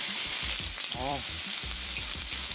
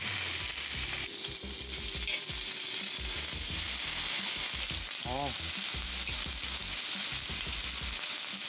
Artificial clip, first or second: first